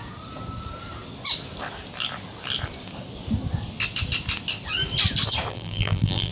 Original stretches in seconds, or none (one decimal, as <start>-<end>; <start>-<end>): 0.0-5.5